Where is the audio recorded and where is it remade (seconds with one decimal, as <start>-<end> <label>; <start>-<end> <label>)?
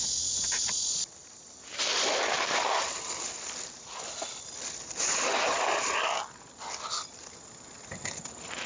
0.0-8.7 recorded